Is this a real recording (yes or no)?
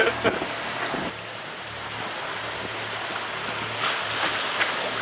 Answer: yes